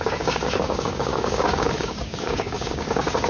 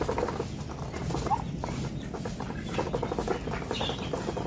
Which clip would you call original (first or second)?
second